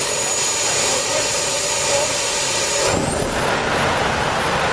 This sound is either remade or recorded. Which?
recorded